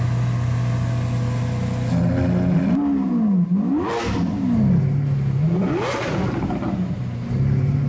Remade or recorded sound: recorded